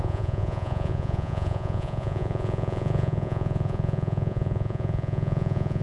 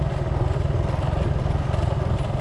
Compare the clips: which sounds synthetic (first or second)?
first